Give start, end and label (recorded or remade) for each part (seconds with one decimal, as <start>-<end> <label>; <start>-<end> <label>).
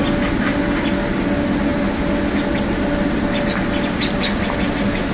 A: 0.0-5.1 recorded